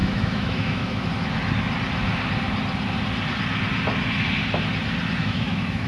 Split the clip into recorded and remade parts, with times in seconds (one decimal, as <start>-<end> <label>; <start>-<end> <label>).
0.0-1.1 remade; 1.1-5.2 recorded; 5.2-5.9 remade